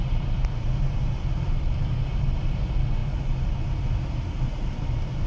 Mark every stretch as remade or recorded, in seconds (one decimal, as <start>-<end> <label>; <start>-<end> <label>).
0.0-5.3 recorded